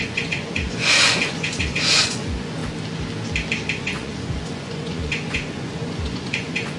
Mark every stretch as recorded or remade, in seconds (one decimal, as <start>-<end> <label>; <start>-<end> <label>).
0.0-2.6 remade; 2.6-3.8 recorded; 3.8-6.8 remade